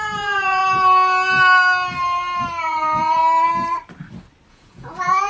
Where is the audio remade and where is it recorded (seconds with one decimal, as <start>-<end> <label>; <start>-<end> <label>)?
0.0-0.6 remade; 0.6-2.6 recorded; 2.6-3.2 remade; 3.2-4.5 recorded; 4.5-5.3 remade